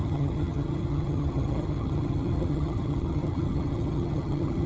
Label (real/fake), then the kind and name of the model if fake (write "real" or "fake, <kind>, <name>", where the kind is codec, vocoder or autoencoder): fake, vocoder, HiFi-GAN